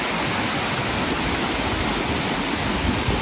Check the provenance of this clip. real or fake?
real